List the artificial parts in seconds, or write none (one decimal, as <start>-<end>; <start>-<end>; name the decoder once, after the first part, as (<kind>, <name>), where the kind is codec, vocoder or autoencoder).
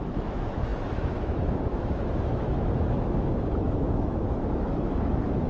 0.0-5.5 (autoencoder, DAC-VAE)